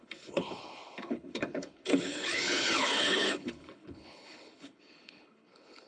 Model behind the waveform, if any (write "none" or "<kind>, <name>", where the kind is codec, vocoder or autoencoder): codec, HILCodec